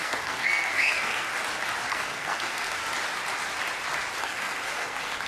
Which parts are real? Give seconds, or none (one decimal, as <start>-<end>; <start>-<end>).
1.3-1.9; 2.8-4.2

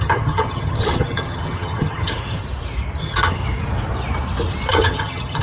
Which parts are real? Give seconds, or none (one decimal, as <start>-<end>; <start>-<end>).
2.4-3.0; 3.4-4.7